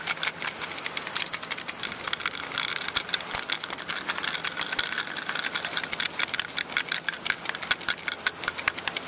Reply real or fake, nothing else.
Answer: real